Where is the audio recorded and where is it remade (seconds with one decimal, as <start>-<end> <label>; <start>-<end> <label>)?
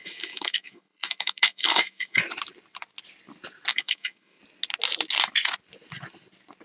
0.0-2.2 remade; 2.2-3.7 recorded; 3.7-4.4 remade; 4.4-6.6 recorded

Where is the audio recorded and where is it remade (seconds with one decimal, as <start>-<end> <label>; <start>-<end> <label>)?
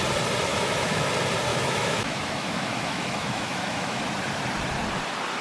0.0-0.5 recorded; 0.5-1.1 remade; 1.1-1.5 recorded; 1.5-4.0 remade; 4.0-5.4 recorded